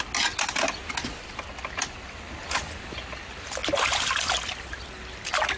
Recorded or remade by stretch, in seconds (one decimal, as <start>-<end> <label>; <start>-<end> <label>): 0.0-5.6 recorded